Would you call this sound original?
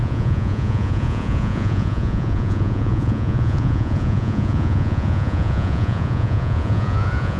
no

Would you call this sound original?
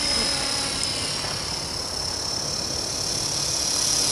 yes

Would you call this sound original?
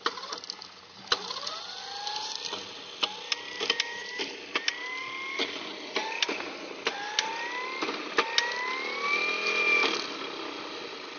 yes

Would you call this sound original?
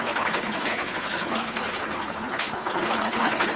no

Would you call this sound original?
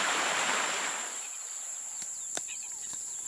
no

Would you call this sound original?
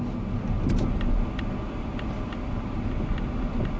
yes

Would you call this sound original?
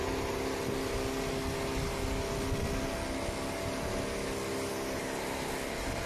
yes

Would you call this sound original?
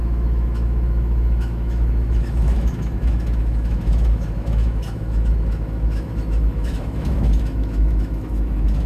no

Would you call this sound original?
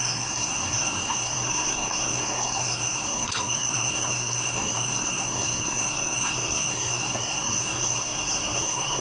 no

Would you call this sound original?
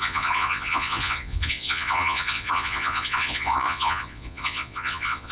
no